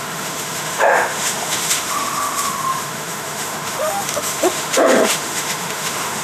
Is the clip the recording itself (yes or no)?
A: no